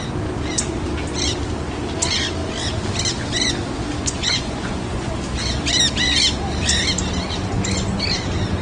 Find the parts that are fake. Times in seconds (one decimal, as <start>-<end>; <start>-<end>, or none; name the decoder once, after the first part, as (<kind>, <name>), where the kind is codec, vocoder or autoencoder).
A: 4.0-5.1 (vocoder, Vocos); 7.5-8.0